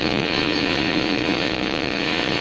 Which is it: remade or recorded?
remade